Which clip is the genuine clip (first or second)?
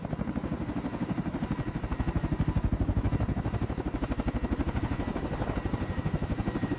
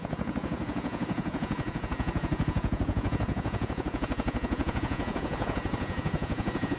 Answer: first